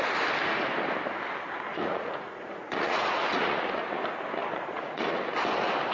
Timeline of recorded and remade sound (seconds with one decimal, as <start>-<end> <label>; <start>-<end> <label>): 0.0-1.7 recorded; 1.7-4.0 remade; 4.0-4.4 recorded; 4.4-5.2 remade; 5.2-5.9 recorded